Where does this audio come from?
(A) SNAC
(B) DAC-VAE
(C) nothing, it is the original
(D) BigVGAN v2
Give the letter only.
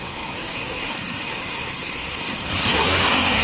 A